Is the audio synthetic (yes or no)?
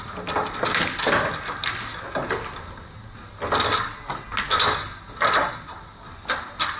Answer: no